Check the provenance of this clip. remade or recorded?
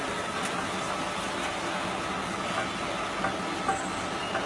recorded